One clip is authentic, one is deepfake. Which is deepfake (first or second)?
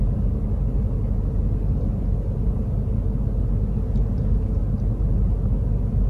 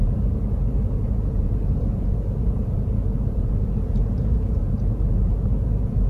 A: second